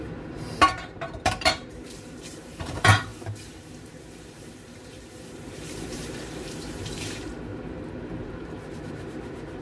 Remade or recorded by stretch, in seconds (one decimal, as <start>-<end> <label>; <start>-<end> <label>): 0.0-9.6 remade